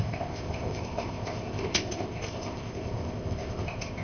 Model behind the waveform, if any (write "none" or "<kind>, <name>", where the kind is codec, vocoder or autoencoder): codec, ZipCodec